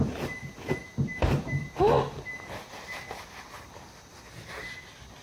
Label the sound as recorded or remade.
recorded